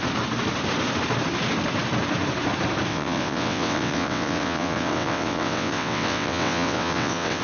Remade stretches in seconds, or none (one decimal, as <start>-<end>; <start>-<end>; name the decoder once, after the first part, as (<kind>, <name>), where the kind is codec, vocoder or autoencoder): 2.9-7.4 (vocoder, WaveNeXt)